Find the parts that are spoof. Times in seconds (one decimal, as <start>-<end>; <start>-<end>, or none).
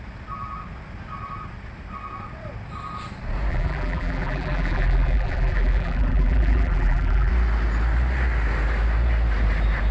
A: 3.5-7.3